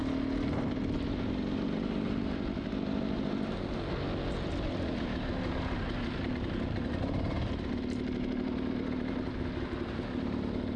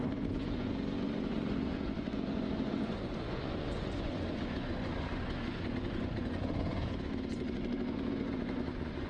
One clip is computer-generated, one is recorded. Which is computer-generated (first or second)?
second